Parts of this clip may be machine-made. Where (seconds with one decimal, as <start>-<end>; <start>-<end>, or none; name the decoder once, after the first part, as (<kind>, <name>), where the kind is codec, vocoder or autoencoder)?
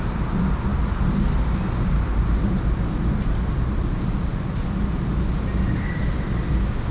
none